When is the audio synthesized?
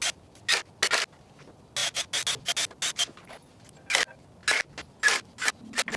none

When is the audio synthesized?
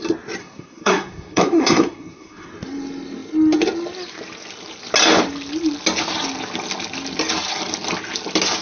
0.4-2.5 (codec, SNAC)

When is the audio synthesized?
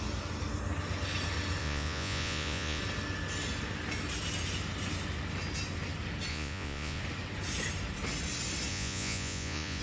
1.6-2.8 (vocoder, Vocos); 6.3-7.0; 8.7-9.8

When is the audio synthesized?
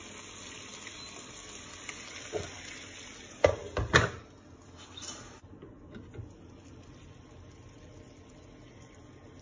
none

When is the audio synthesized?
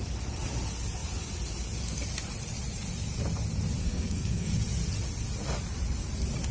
3.8-4.5 (codec, SNAC)